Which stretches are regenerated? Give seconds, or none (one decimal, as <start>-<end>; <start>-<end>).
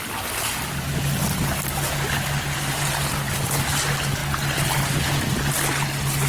none